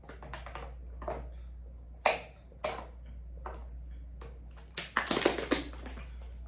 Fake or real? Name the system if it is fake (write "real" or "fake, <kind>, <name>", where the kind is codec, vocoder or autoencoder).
real